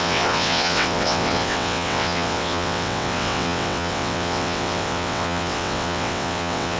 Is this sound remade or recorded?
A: remade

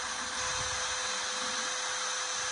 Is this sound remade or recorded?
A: recorded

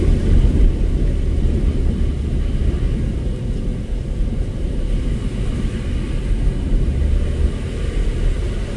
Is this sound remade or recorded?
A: recorded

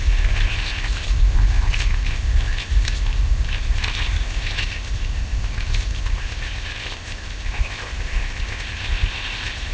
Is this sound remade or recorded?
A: remade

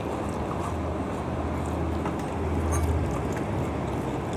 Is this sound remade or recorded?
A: recorded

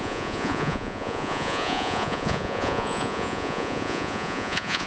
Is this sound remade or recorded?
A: remade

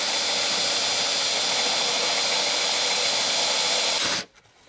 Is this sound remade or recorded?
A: recorded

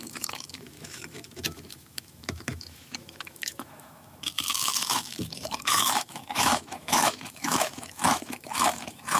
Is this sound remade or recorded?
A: remade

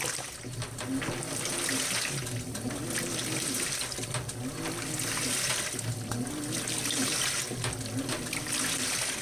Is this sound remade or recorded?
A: recorded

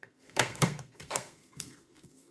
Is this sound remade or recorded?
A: remade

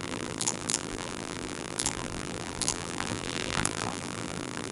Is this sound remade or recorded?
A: remade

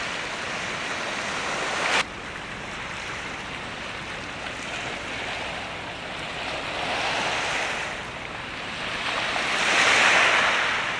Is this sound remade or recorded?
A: recorded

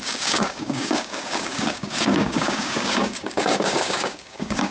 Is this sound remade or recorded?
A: remade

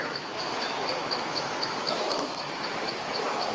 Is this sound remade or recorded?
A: remade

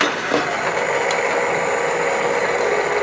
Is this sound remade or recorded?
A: recorded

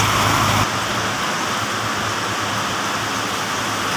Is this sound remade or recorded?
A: recorded